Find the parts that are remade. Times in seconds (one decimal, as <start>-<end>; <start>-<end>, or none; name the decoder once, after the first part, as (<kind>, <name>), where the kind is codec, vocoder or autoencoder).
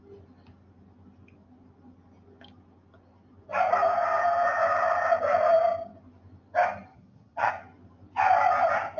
6.9-7.5 (vocoder, HiFi-GAN)